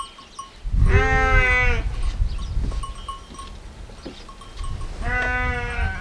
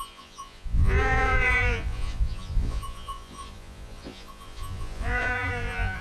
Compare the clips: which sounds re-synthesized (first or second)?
second